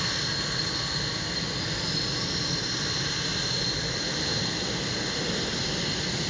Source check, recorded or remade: recorded